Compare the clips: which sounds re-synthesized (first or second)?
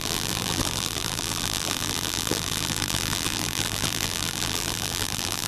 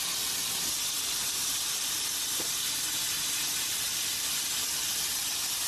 first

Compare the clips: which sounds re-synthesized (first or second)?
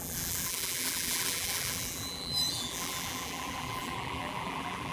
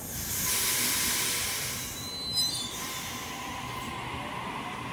first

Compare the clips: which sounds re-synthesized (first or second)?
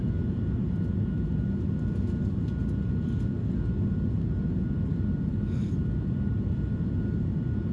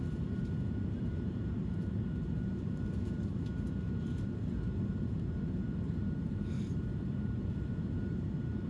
second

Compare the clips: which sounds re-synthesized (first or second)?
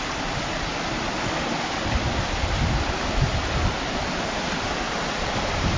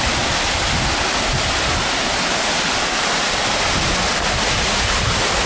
first